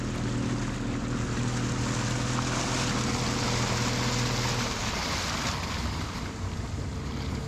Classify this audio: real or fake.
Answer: real